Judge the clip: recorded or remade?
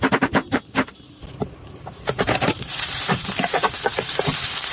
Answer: remade